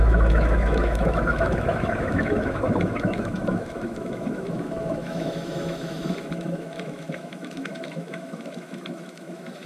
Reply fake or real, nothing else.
fake